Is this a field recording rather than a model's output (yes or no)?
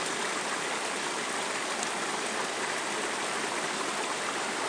yes